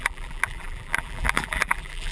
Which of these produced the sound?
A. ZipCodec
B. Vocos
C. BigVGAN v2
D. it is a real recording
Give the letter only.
C